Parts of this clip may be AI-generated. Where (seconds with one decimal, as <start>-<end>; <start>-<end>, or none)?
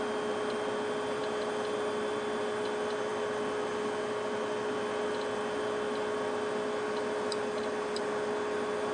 none